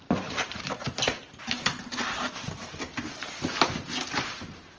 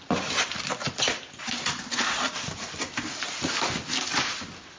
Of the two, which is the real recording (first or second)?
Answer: second